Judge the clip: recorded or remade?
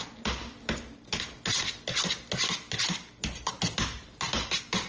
recorded